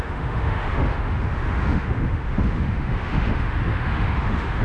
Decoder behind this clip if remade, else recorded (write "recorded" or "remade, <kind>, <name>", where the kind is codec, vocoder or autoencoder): remade, autoencoder, DAC-VAE